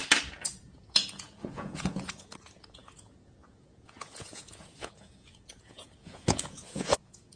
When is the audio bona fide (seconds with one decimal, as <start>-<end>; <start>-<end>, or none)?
0.0-0.7